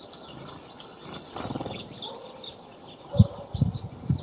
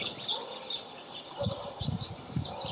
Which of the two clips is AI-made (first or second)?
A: second